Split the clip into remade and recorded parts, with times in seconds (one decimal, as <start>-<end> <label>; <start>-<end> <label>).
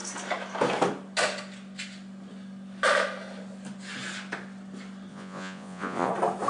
0.0-5.1 recorded; 5.1-6.1 remade; 6.1-6.5 recorded